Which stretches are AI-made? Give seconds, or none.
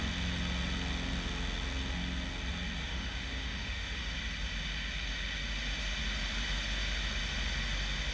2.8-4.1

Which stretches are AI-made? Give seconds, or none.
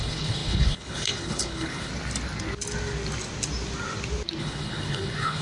0.0-1.9; 4.4-5.4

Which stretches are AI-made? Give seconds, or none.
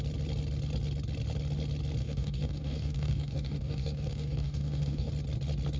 2.0-5.1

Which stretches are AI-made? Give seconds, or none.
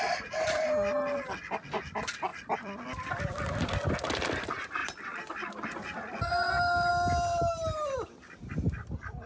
2.3-3.7; 4.8-6.3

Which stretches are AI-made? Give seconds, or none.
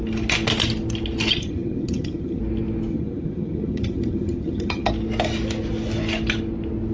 1.3-2.4; 2.9-4.9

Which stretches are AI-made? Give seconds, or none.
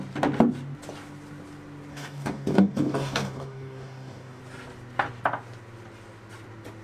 1.9-4.4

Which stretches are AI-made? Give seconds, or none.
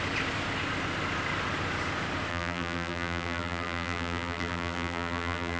2.3-5.6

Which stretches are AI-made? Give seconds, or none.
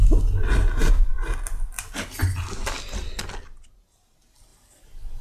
none